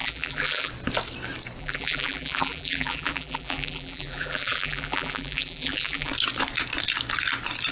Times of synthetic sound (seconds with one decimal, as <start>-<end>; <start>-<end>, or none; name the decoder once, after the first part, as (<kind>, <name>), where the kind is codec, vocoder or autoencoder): 0.0-0.7 (vocoder, BigVGAN v2); 1.6-6.1